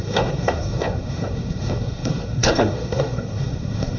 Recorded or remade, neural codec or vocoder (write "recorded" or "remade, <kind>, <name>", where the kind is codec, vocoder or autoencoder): remade, codec, SNAC